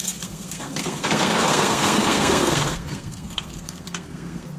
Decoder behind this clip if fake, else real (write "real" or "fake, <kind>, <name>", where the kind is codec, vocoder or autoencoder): fake, codec, SNAC